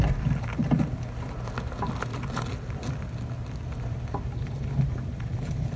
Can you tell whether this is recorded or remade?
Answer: recorded